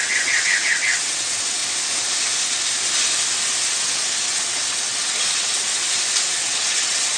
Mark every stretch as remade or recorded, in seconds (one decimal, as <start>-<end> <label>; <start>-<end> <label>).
0.0-1.6 remade; 1.6-3.7 recorded; 3.7-5.8 remade; 5.8-6.4 recorded; 6.4-7.2 remade